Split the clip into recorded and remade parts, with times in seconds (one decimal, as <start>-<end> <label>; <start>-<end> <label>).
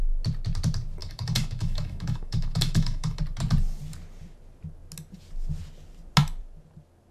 0.0-1.0 recorded; 1.0-3.2 remade; 3.2-7.1 recorded